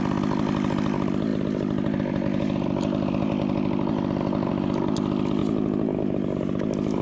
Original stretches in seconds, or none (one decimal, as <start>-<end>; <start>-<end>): 0.0-7.0